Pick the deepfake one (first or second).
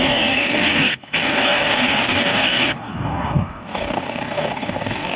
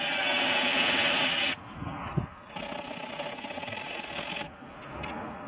first